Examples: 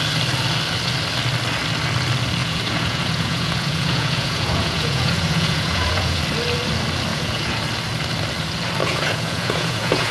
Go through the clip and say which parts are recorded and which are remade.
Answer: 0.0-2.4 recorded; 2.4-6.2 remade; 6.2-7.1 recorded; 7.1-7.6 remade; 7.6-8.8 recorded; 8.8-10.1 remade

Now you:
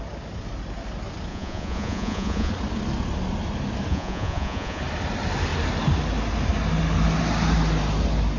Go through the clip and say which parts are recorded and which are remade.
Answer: 0.0-1.3 recorded; 1.3-2.5 remade; 2.5-3.9 recorded; 3.9-4.8 remade; 4.8-8.4 recorded

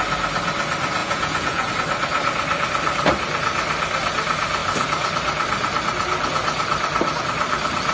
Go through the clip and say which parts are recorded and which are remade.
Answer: 0.0-1.0 recorded; 1.0-1.7 remade; 1.7-7.9 recorded

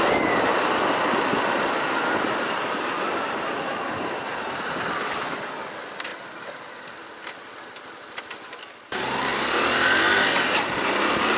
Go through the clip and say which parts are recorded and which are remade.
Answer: 0.0-11.4 recorded

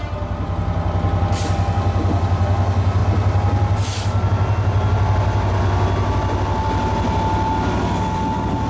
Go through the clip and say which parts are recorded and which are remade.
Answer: 0.0-8.7 recorded

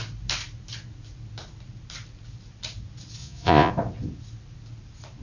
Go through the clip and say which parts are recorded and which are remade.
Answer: 0.0-3.2 recorded; 3.2-3.7 remade; 3.7-5.2 recorded

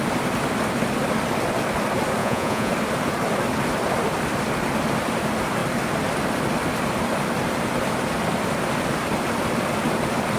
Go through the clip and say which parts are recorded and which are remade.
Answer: 0.0-2.2 recorded; 2.2-2.7 remade; 2.7-10.4 recorded

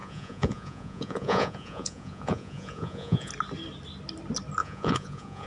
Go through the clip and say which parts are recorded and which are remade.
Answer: 0.0-3.3 remade; 3.3-4.6 recorded; 4.6-5.5 remade